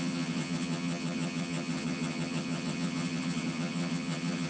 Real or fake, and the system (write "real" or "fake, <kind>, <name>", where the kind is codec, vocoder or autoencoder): fake, vocoder, HiFi-GAN